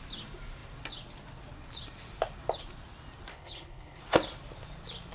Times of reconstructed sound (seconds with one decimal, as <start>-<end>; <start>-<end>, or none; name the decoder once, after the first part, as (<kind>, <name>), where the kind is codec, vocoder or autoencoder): 3.3-4.0 (codec, HILCodec)